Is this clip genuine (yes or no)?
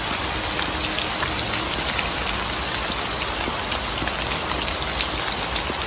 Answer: yes